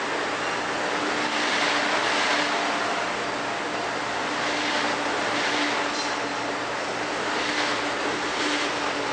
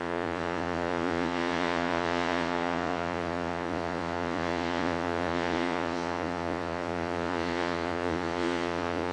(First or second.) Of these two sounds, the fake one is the second